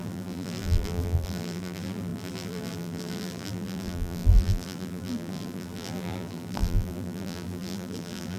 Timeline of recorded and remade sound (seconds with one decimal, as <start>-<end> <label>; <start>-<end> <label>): 0.0-8.4 remade